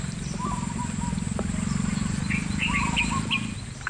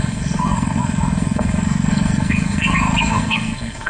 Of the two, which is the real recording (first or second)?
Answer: first